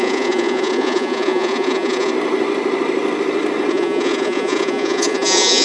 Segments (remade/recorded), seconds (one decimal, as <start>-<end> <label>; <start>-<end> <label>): 0.0-2.1 remade; 2.1-3.7 recorded; 3.7-5.6 remade